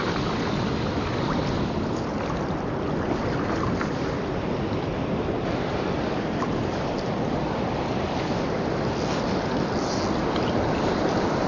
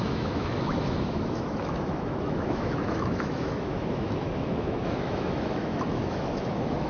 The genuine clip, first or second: first